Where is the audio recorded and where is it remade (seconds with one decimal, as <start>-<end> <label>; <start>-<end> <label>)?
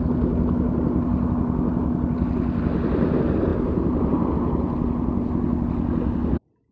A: 0.0-3.5 recorded; 3.5-4.3 remade; 4.3-6.7 recorded